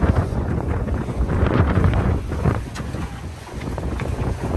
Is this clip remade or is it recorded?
remade